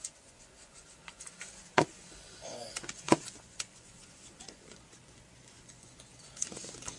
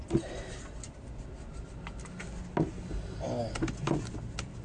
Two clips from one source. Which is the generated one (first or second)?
first